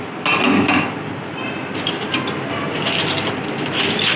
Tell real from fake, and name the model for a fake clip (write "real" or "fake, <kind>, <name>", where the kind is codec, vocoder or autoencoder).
real